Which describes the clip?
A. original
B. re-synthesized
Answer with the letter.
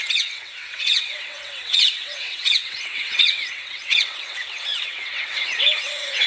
B